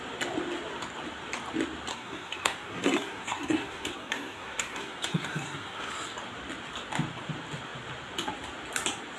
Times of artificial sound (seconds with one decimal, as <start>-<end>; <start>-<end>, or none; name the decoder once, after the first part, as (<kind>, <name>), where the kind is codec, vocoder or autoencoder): 1.9-5.9 (codec, SNAC)